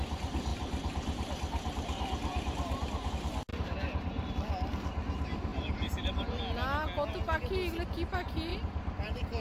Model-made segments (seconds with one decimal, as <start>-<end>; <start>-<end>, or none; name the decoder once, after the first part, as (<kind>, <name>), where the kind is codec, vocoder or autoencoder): 0.5-3.1 (vocoder, BigVGAN v2); 3.5-4.3; 5.5-6.4; 8.5-9.4